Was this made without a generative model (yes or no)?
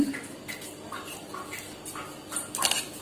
yes